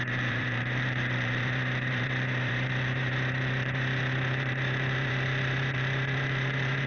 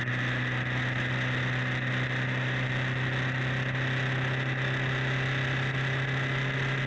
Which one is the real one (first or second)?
second